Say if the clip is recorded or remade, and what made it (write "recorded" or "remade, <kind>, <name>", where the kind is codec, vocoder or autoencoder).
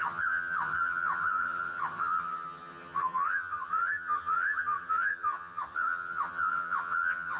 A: remade, vocoder, HiFi-GAN